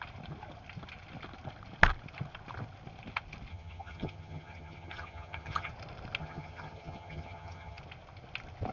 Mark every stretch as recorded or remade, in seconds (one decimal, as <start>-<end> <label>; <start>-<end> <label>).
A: 0.0-3.5 recorded; 3.5-5.7 remade; 5.7-6.2 recorded; 6.2-7.8 remade; 7.8-8.7 recorded